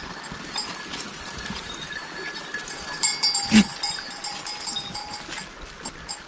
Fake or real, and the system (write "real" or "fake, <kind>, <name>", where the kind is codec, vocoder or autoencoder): real